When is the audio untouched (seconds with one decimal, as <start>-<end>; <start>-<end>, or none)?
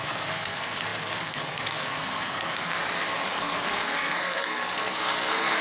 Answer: 2.8-3.3